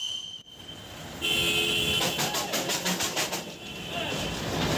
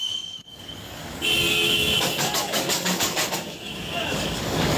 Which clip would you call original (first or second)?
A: first